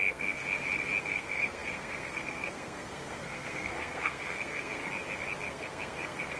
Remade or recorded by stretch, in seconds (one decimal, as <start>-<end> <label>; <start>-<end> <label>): 0.0-0.4 remade; 0.4-1.0 recorded; 1.0-4.8 remade; 4.8-5.4 recorded; 5.4-6.4 remade